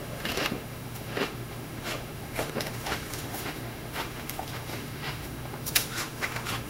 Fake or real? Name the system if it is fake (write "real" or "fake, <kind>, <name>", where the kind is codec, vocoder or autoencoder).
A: fake, autoencoder, DAC-VAE